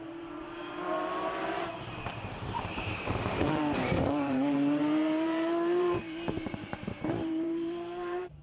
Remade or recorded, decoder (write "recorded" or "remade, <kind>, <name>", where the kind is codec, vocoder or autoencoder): remade, vocoder, BigVGAN v2